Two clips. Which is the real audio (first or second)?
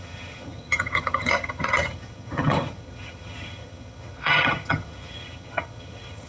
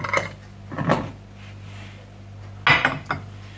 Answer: second